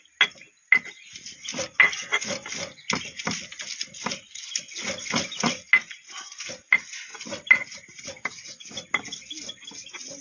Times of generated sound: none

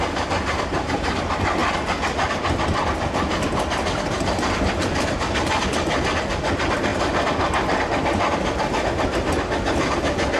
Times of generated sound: none

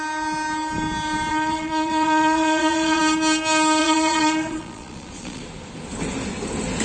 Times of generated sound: 1.3-3.0 (vocoder, Vocos); 3.8-5.4